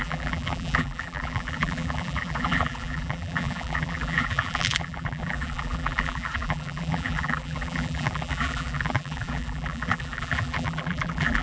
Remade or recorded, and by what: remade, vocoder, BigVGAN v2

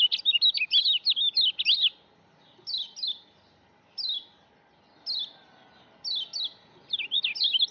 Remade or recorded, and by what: recorded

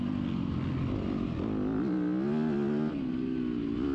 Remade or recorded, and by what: recorded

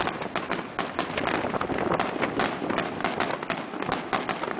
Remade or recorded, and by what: recorded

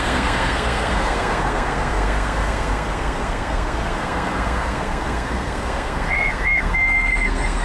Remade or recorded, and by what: remade, codec, SNAC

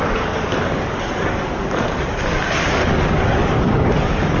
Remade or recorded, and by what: remade, codec, DAC